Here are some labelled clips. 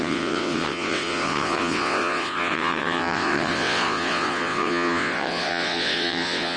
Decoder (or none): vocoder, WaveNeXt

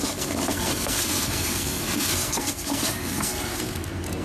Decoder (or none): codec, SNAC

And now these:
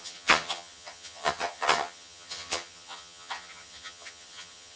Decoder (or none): vocoder, HiFi-GAN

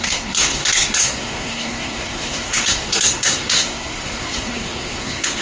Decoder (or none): codec, SNAC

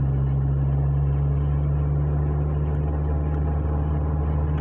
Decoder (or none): none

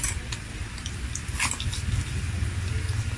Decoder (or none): none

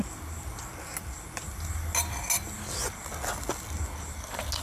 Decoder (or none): none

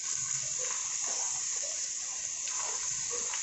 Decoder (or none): none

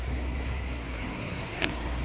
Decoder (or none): codec, SNAC